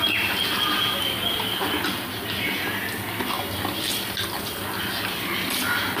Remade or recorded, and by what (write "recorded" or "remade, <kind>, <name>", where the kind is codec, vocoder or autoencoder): recorded